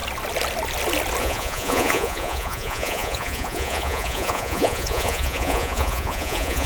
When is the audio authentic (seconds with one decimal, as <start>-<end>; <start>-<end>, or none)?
0.0-1.2

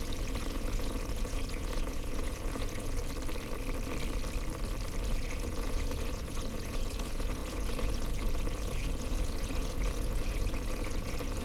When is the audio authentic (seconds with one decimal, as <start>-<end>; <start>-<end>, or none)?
3.0-5.1